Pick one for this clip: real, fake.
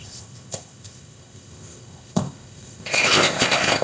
fake